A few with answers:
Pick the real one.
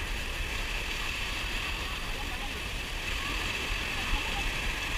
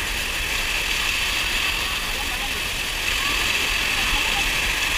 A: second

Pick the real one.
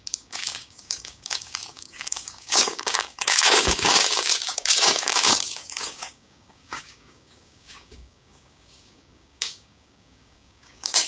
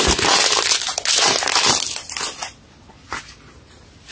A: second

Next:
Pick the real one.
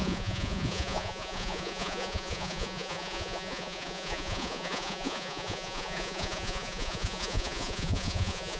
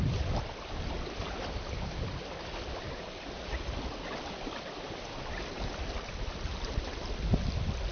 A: second